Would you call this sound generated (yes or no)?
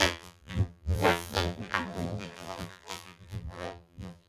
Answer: yes